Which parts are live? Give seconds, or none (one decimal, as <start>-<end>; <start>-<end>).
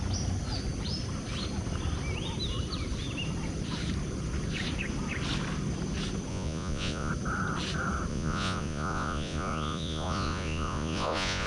0.0-6.3; 7.1-8.1